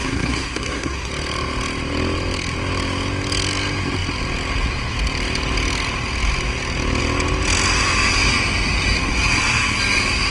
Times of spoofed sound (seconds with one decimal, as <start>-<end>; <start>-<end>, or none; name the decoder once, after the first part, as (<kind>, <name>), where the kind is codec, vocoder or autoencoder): 0.0-1.1 (codec, SNAC)